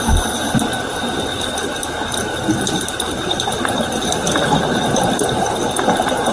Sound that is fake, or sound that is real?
real